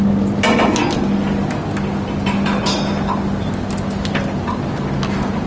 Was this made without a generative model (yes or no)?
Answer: yes